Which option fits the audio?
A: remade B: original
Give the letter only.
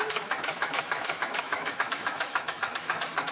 A